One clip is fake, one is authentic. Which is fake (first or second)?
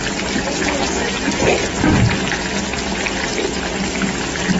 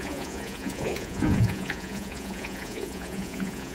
second